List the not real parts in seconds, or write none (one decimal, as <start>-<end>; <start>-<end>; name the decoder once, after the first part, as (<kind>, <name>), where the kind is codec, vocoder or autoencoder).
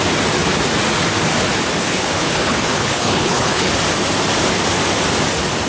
1.8-3.7 (codec, HILCodec)